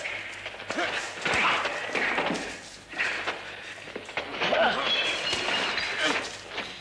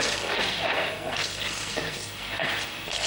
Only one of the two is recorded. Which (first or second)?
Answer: first